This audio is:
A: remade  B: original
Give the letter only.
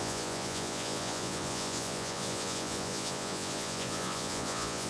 A